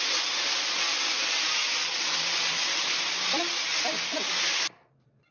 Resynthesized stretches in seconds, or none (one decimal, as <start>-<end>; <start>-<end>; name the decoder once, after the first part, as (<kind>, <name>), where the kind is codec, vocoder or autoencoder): none